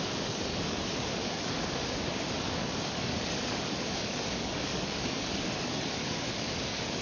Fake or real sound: fake